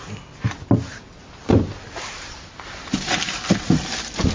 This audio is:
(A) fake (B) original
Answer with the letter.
A